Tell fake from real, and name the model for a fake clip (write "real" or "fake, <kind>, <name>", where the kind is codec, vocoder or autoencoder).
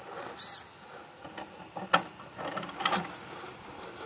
real